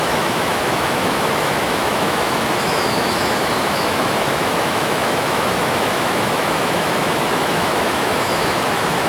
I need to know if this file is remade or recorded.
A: remade